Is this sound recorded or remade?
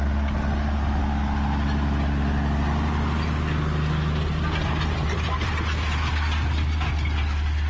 recorded